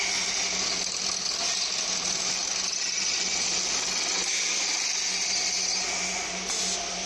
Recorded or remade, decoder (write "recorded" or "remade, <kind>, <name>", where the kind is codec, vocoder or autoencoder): recorded